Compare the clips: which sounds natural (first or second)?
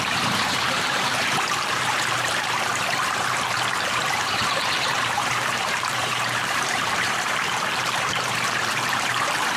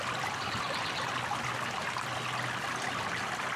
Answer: second